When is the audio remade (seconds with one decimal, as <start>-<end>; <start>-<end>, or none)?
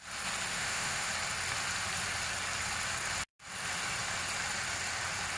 0.6-1.1